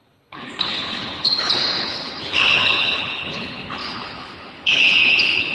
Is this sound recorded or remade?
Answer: remade